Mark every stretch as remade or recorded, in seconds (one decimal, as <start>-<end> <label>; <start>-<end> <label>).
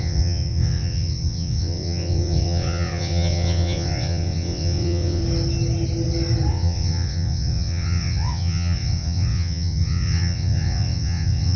0.0-5.2 remade; 5.2-6.5 recorded; 6.5-11.6 remade